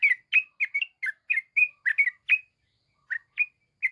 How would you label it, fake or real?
real